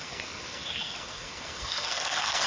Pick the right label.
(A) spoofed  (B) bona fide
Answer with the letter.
A